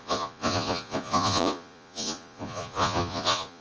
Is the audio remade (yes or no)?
yes